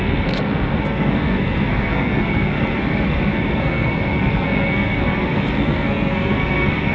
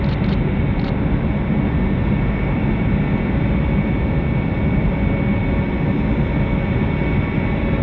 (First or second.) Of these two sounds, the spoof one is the first